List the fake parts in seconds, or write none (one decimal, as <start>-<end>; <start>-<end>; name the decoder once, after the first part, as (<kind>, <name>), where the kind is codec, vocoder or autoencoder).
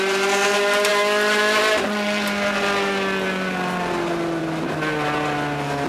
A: none